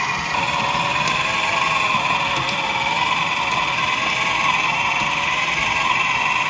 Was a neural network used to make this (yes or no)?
no